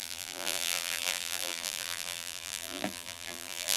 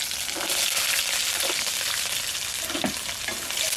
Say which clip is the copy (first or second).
first